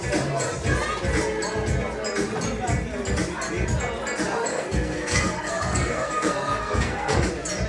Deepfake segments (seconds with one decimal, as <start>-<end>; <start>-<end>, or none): 4.5-7.3